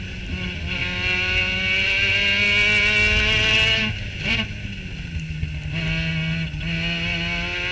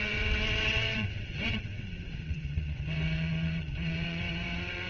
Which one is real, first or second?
first